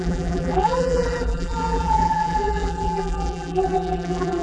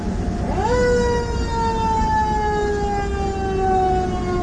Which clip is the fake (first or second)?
first